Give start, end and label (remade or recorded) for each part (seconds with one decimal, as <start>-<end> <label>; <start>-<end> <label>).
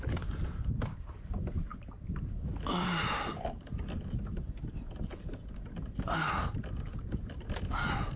0.0-8.2 recorded